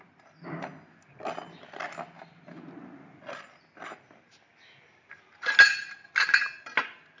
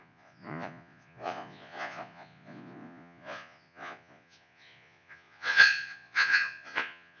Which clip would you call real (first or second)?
first